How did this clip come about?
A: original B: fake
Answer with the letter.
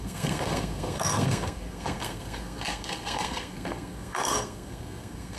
B